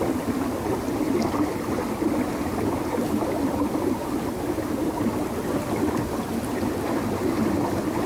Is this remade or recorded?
recorded